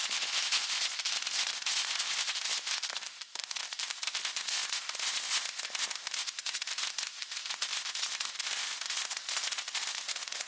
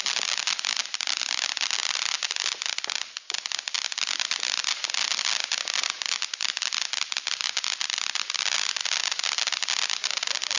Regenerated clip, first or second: first